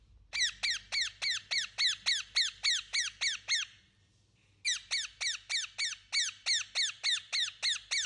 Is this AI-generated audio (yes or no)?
no